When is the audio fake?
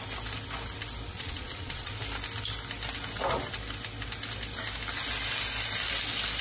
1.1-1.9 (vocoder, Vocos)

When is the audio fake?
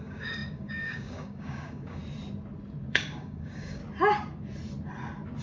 0.0-2.0 (codec, DAC); 2.9-3.8